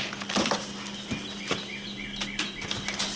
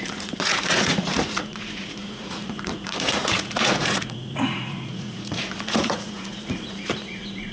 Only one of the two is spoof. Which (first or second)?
second